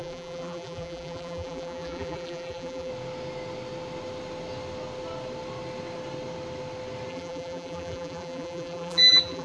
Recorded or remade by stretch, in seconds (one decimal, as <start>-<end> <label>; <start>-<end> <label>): 0.0-2.9 remade; 2.9-7.1 recorded; 7.1-9.4 remade